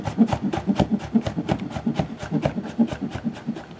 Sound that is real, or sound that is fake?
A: real